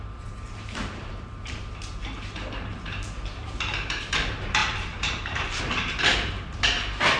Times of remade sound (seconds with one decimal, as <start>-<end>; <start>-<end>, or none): 0.0-7.2